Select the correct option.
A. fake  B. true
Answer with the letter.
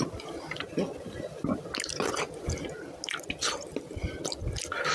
B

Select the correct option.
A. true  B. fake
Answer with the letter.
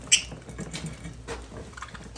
A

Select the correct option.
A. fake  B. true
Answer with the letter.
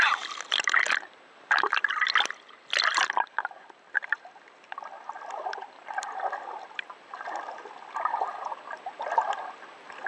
A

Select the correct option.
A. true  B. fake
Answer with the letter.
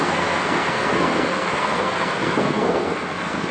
B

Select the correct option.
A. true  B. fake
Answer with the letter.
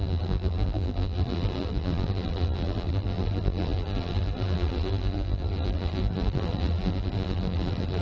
B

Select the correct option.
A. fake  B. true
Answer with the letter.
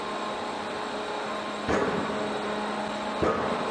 B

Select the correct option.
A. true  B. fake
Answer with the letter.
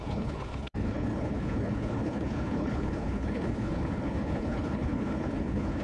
B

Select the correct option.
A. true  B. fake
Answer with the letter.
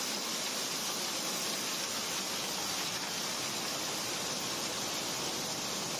A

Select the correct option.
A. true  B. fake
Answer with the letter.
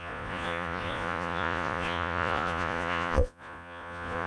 B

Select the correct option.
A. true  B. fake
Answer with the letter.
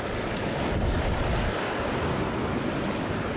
A